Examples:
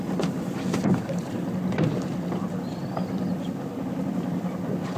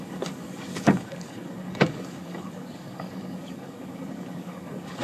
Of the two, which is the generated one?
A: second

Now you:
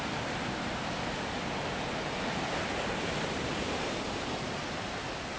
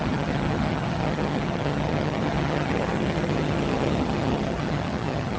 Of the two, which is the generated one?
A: second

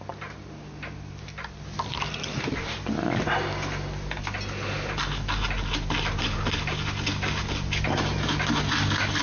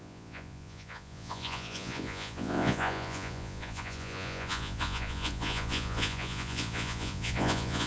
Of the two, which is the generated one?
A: second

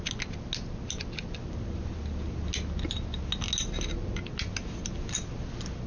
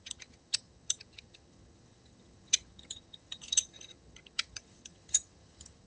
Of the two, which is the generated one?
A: second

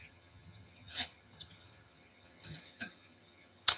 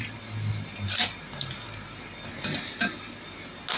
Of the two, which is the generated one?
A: first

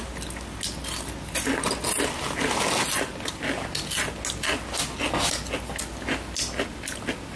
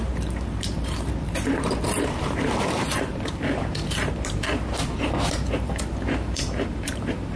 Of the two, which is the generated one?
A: second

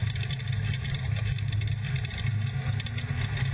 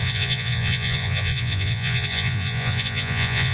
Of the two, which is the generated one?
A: second